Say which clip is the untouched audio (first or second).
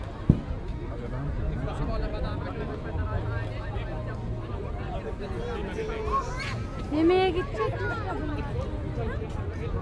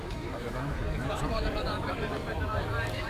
first